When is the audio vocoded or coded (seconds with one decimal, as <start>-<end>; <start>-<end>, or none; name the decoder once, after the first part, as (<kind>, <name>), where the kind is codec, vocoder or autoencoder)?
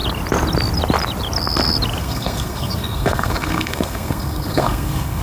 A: 2.0-5.2 (codec, SNAC)